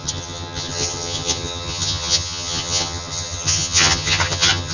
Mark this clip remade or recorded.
remade